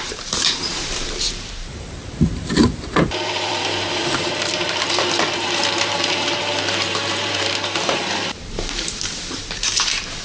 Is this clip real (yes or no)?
no